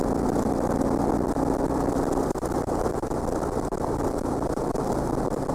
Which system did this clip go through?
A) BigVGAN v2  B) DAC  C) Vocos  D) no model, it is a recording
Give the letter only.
A